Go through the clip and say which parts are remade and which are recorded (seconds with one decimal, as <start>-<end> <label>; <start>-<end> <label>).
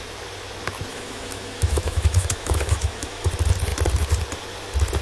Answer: 0.0-0.9 recorded; 0.9-3.3 remade; 3.3-5.0 recorded